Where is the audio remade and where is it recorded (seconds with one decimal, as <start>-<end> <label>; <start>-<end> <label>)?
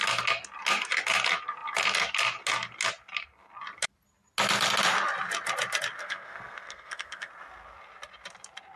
0.0-6.0 recorded; 6.0-7.3 remade; 7.3-8.8 recorded